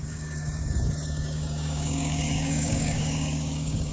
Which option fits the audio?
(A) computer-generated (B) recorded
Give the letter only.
A